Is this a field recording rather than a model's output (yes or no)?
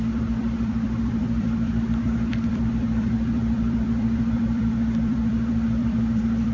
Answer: no